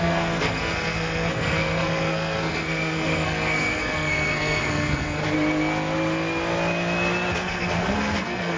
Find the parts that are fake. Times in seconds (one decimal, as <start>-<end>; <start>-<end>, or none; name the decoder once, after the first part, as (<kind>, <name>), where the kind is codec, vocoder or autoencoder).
0.0-5.2 (codec, SNAC); 7.3-8.6